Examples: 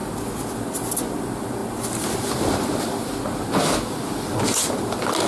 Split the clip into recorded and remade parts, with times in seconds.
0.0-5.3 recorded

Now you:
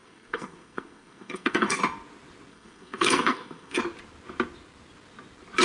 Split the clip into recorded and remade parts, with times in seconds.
0.0-1.8 remade; 1.8-2.5 recorded; 2.5-3.8 remade; 3.8-5.6 recorded